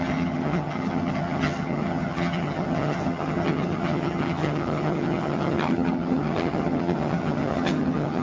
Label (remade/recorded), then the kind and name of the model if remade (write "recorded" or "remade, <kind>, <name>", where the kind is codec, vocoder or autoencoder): remade, vocoder, HiFi-GAN